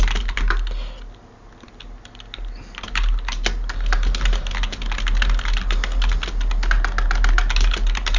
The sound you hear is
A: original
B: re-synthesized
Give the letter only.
A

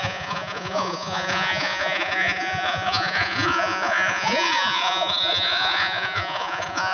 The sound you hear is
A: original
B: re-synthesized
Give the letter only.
B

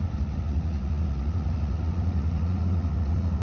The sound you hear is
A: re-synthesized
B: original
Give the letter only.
A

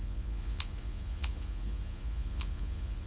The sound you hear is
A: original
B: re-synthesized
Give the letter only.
B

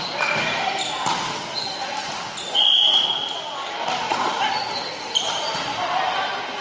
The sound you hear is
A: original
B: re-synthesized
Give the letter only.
A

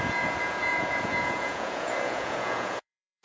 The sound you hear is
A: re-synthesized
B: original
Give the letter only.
A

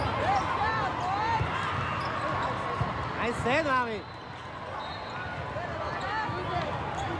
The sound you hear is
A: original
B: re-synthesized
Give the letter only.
A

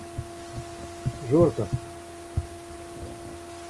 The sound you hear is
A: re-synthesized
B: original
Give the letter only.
B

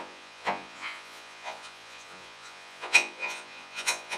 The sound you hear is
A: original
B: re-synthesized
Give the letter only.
B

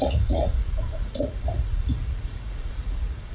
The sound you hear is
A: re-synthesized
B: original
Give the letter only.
A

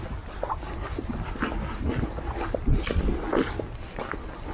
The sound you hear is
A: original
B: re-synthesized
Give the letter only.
A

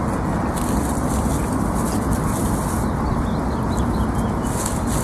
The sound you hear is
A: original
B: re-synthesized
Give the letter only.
A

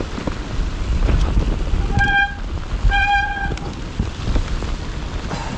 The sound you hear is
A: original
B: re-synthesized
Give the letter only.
A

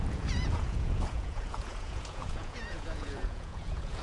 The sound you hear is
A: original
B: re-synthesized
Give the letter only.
B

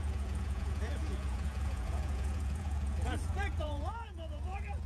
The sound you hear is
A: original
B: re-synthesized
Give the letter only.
B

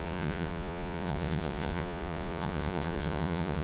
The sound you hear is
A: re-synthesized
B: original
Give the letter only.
A